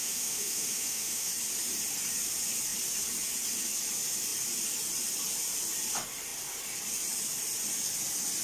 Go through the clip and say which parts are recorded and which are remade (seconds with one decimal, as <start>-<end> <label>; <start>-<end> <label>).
0.0-1.3 remade; 1.3-8.4 recorded